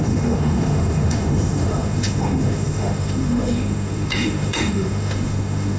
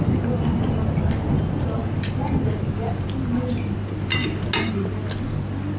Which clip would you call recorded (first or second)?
second